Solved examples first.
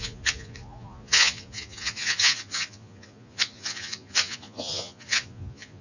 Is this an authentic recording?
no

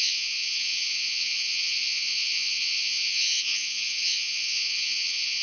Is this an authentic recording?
no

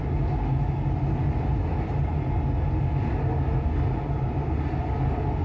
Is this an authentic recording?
yes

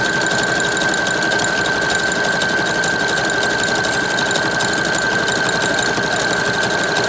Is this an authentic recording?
yes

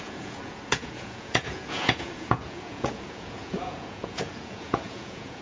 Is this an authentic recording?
no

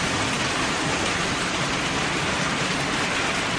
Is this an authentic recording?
yes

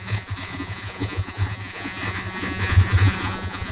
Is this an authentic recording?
no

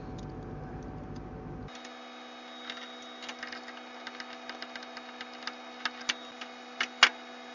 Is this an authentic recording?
yes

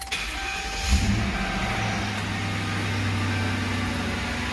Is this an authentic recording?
yes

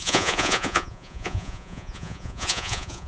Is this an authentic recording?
no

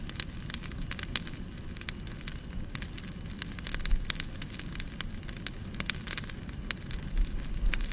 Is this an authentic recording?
yes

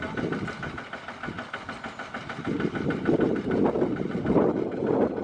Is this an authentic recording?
yes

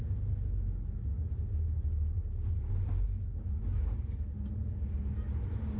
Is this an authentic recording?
yes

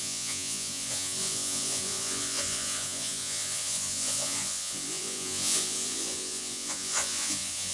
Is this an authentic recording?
no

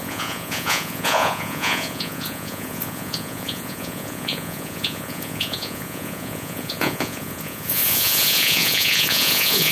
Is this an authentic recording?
no